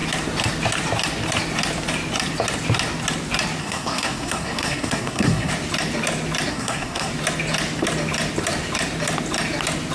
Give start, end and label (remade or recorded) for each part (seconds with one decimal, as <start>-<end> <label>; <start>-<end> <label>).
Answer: 0.0-3.6 recorded; 3.6-5.5 remade; 5.5-6.5 recorded; 6.5-7.1 remade; 7.1-9.9 recorded